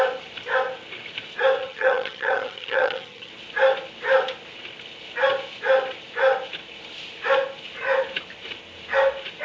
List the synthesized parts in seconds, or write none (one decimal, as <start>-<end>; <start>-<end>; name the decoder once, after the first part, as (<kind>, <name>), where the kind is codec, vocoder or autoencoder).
1.6-3.3 (vocoder, HiFi-GAN)